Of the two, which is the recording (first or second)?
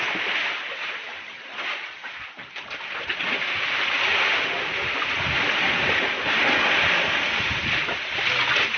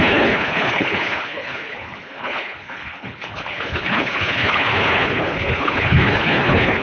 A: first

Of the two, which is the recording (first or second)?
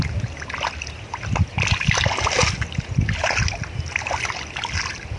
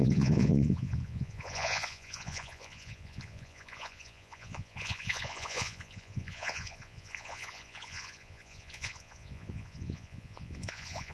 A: first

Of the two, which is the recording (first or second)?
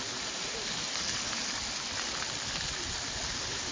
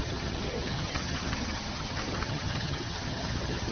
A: first